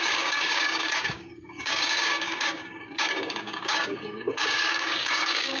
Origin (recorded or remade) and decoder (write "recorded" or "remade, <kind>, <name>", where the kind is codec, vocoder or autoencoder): remade, codec, DAC